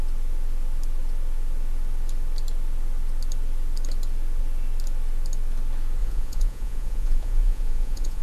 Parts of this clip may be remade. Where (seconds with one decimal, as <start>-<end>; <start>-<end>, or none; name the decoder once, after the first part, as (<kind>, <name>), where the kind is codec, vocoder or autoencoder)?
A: 6.0-8.2 (vocoder, Vocos)